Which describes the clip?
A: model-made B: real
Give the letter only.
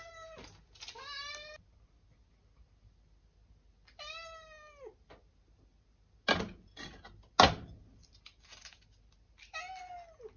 B